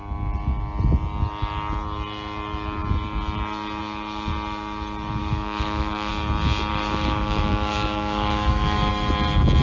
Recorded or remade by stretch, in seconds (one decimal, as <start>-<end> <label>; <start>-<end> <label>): 0.0-5.2 recorded; 5.2-6.1 remade; 6.1-6.7 recorded; 6.7-8.9 remade; 8.9-9.6 recorded